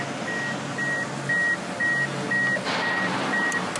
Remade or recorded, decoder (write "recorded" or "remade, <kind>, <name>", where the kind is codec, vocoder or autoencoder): recorded